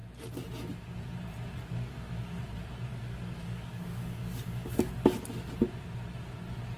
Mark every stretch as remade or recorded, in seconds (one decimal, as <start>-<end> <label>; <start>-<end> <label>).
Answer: 0.0-1.6 recorded; 1.6-2.4 remade; 2.4-2.9 recorded; 2.9-4.9 remade; 4.9-6.8 recorded